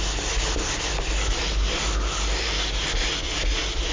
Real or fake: real